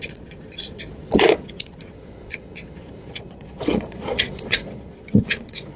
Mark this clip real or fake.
fake